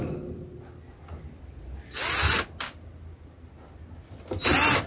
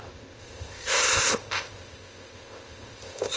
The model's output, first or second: second